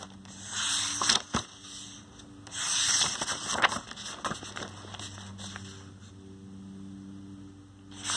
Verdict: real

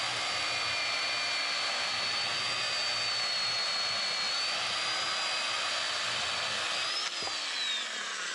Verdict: real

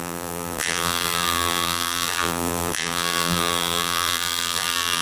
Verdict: fake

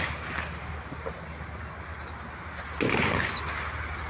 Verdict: real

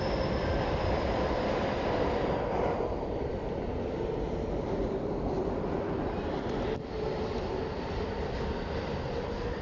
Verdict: fake